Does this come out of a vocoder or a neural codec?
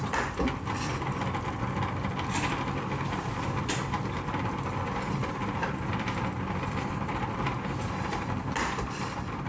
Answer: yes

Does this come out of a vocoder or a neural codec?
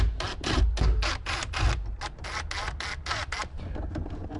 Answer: no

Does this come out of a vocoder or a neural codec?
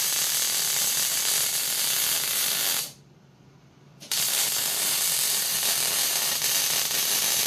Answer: yes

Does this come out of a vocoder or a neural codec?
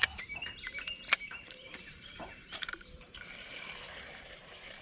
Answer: yes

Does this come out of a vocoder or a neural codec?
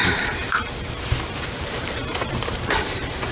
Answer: yes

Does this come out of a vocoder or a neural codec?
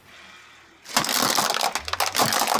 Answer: no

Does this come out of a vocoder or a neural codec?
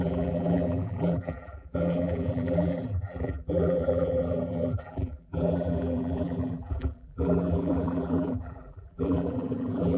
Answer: yes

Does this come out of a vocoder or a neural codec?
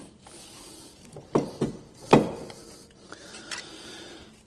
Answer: no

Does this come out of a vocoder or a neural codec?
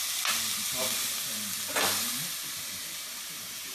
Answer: no